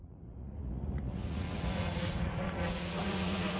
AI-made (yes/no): yes